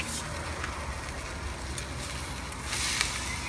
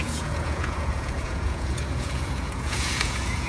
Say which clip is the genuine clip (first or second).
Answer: first